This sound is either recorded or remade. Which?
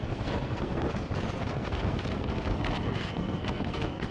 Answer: remade